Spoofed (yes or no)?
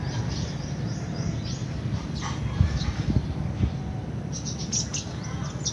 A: no